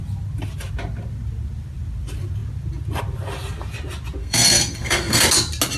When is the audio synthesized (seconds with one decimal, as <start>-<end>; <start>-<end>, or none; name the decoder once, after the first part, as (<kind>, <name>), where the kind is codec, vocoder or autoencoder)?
4.2-5.2 (codec, SNAC)

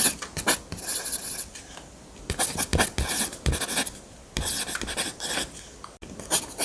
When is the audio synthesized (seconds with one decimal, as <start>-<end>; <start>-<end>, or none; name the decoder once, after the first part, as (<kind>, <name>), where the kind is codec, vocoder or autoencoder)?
none

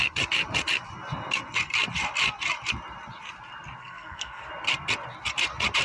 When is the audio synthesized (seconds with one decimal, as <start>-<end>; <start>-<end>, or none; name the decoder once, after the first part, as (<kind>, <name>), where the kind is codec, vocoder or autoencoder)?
3.8-4.5 (codec, SNAC)

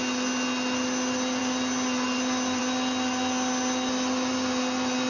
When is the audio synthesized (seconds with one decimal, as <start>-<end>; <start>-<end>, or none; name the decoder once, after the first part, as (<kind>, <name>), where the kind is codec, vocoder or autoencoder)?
none

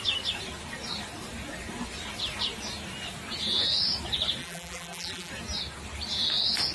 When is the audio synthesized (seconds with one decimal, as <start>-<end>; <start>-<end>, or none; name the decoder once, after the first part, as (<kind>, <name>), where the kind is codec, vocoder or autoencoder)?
4.4-5.3 (vocoder, BigVGAN v2)

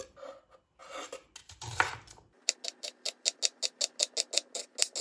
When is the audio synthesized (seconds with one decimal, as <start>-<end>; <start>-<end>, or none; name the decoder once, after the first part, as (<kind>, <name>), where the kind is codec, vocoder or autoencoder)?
none

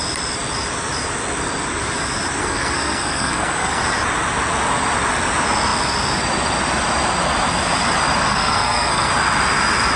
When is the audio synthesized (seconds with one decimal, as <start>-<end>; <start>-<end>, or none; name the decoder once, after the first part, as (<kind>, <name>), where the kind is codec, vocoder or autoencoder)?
2.4-3.8 (codec, SNAC); 8.3-9.1

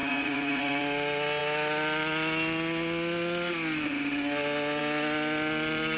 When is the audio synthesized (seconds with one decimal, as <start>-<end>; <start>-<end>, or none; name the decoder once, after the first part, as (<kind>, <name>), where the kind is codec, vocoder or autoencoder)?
0.0-0.8 (vocoder, Vocos)